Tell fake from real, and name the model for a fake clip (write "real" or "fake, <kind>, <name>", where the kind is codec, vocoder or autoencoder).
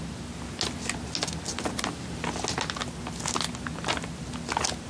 real